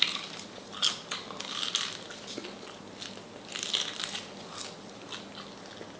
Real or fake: real